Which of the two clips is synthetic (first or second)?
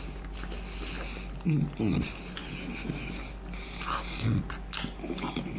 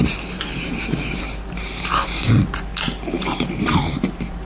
second